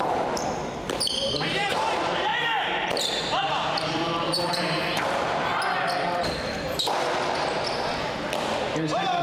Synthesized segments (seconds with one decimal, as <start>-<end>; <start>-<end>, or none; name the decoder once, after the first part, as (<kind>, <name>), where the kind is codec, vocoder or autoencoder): 0.0-5.5 (vocoder, BigVGAN v2); 8.7-9.2